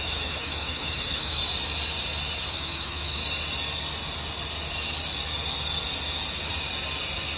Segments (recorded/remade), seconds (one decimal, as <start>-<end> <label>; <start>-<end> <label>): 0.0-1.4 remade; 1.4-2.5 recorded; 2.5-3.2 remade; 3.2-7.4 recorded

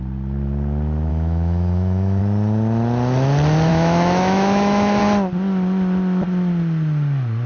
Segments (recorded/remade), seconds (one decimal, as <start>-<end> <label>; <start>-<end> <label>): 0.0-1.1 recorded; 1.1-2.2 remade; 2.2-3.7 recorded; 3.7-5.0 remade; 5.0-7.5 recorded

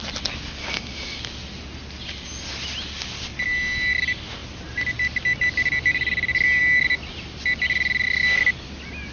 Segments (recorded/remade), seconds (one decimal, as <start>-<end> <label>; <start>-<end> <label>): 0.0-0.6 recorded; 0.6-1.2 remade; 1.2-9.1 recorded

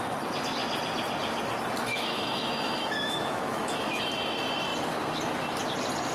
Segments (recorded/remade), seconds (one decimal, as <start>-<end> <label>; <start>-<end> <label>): 0.0-1.9 recorded; 1.9-4.0 remade; 4.0-6.1 recorded

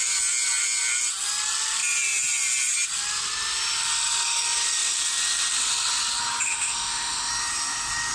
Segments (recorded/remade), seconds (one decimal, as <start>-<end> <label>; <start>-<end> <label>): 0.0-6.5 recorded; 6.5-7.3 remade; 7.3-8.1 recorded

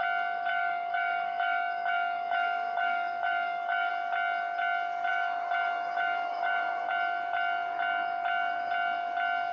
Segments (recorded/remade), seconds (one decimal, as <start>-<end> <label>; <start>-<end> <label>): 0.0-0.5 recorded; 0.5-3.9 remade; 3.9-5.1 recorded; 5.1-6.9 remade; 6.9-9.5 recorded

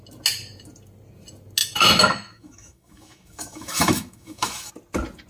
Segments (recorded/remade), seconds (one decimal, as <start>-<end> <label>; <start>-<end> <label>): 0.0-1.6 recorded; 1.6-4.7 remade; 4.7-5.3 recorded

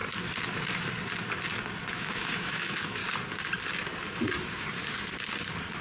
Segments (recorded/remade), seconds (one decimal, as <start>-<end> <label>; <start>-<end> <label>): 0.0-1.9 recorded; 1.9-3.0 remade; 3.0-5.8 recorded